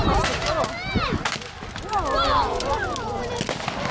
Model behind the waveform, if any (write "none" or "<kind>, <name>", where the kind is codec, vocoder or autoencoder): none